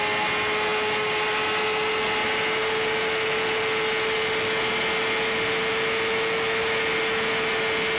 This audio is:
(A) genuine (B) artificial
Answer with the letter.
A